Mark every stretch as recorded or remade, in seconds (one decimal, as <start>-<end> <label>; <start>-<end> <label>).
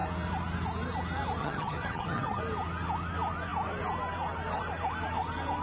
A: 0.0-1.4 recorded; 1.4-2.4 remade; 2.4-5.6 recorded